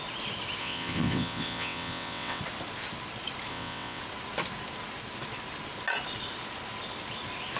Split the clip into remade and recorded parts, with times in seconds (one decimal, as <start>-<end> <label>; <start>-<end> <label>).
0.0-0.6 recorded; 0.6-2.4 remade; 2.4-3.5 recorded; 3.5-4.0 remade; 4.0-7.6 recorded